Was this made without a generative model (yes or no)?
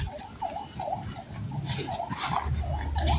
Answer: yes